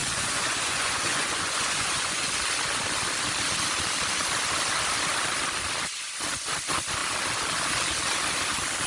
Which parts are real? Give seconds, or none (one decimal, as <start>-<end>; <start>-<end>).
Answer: 2.3-8.9